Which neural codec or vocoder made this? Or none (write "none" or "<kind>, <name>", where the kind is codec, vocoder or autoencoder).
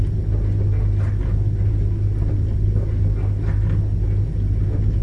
none